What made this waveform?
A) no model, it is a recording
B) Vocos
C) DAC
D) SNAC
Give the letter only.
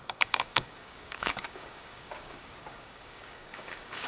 C